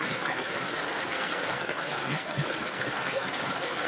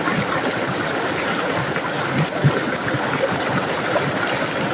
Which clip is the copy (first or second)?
first